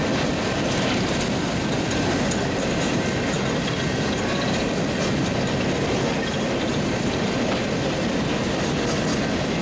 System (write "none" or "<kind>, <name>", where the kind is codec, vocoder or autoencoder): none